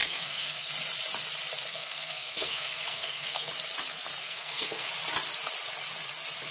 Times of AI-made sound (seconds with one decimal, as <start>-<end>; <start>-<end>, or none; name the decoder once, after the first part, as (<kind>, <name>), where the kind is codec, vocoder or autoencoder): 0.0-0.7 (codec, SNAC); 1.7-3.5; 4.2-4.9